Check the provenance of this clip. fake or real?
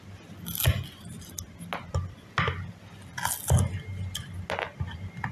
real